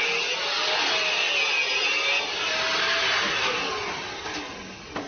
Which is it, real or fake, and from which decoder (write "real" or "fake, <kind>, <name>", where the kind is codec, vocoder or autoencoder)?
real